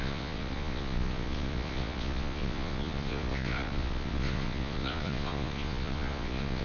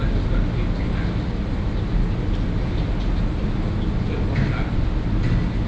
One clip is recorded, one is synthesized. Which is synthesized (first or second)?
first